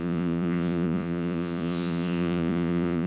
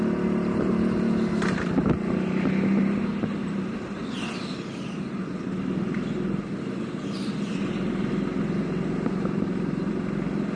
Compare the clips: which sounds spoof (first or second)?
first